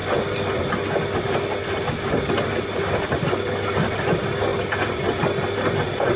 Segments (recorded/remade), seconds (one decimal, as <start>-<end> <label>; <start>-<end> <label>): 0.0-6.2 recorded